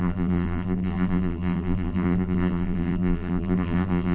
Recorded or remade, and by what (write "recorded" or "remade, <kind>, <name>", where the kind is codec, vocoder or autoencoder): remade, vocoder, BigVGAN v2